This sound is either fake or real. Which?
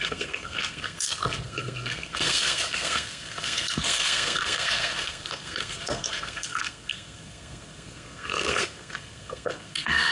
fake